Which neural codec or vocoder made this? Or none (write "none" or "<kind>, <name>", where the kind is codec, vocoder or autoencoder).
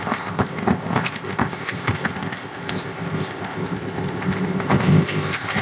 codec, ZipCodec